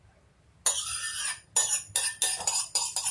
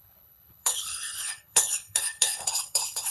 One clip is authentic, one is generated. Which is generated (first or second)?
second